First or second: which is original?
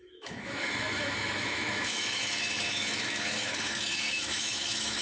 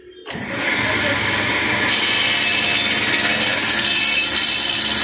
second